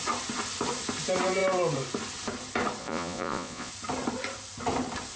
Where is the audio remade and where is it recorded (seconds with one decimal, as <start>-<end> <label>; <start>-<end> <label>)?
0.0-2.8 recorded; 2.8-3.7 remade; 3.7-5.2 recorded